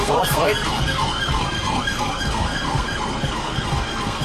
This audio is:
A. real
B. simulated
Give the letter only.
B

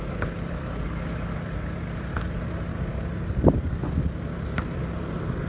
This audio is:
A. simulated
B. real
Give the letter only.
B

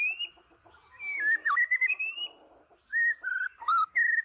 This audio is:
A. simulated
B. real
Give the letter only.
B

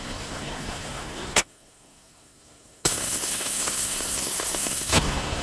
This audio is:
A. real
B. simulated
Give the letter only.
B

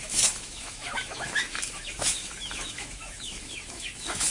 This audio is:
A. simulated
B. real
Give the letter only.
A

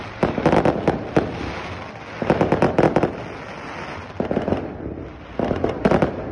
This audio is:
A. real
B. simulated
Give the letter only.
A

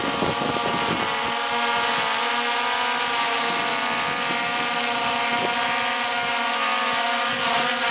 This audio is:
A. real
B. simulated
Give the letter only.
A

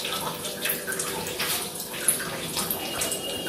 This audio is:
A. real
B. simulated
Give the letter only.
B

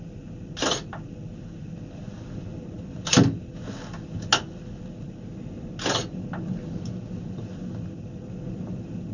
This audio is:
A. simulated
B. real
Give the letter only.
B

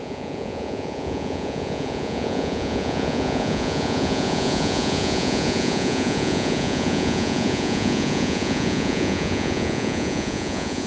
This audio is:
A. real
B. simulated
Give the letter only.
B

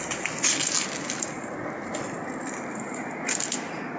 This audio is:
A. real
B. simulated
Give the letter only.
A